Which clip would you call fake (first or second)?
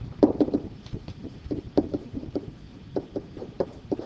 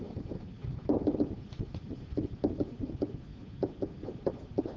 first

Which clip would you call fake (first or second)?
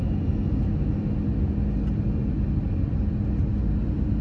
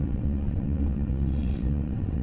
second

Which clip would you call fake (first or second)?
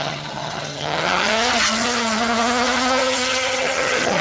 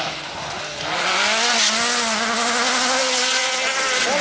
first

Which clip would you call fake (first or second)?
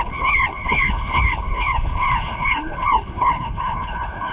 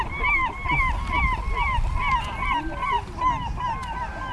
first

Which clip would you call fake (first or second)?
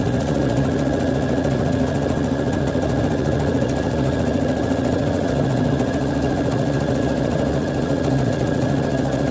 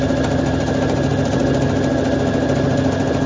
first